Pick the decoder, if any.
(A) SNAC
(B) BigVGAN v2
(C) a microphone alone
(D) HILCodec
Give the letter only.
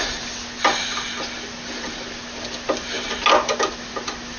C